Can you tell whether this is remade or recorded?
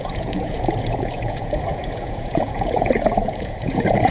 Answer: remade